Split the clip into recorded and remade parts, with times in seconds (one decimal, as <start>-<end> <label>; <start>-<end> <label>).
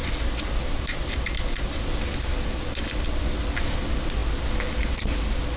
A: 0.0-5.6 recorded